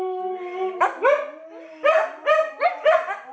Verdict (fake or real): real